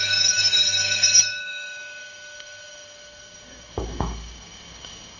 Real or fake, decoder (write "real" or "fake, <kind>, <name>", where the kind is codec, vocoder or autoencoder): fake, codec, DAC